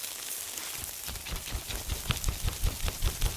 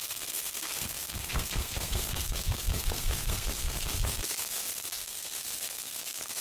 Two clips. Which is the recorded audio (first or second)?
first